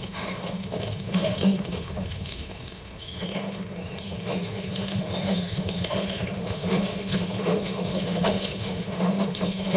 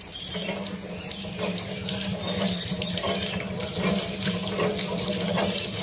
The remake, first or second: first